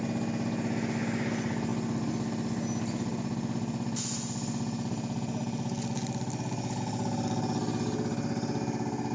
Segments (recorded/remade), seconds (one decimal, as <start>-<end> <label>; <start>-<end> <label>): 0.0-9.1 recorded